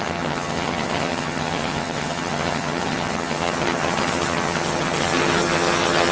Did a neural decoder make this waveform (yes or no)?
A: yes